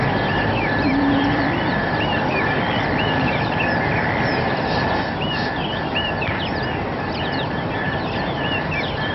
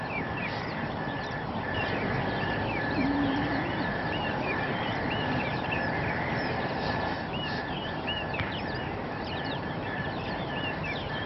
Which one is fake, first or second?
second